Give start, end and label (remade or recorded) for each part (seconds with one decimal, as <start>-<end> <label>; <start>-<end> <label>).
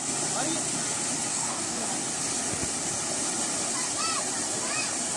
0.0-1.3 recorded; 1.3-1.9 remade; 1.9-5.2 recorded